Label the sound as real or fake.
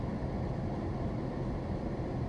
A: real